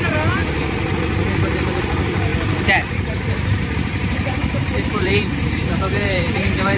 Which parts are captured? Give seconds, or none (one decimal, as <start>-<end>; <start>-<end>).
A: 0.0-2.3